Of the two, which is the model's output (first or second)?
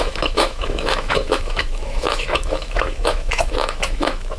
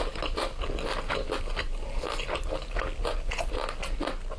first